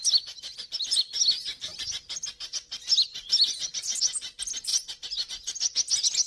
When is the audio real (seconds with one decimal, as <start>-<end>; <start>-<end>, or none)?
0.0-6.3